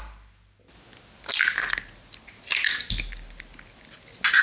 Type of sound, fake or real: real